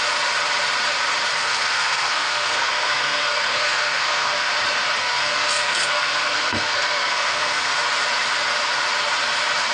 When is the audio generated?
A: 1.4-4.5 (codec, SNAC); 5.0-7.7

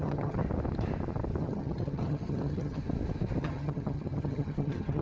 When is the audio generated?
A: 0.0-0.4 (vocoder, HiFi-GAN); 1.4-2.8; 3.4-5.0

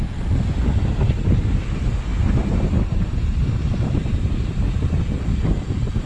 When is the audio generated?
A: 2.1-3.4 (vocoder, BigVGAN v2)